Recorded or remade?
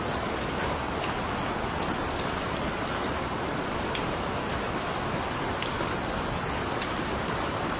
recorded